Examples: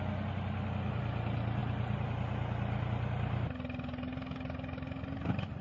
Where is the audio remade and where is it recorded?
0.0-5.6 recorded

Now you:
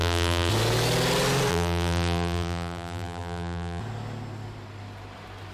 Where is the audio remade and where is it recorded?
0.0-0.5 remade; 0.5-1.5 recorded; 1.5-3.8 remade; 3.8-5.5 recorded